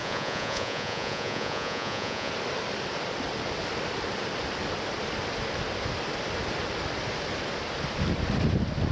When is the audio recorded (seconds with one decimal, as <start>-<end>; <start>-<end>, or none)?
2.3-8.9